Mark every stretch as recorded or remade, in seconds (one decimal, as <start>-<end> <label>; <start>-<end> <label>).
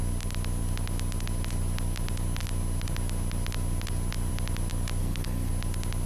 0.0-5.0 recorded; 5.0-5.5 remade; 5.5-6.1 recorded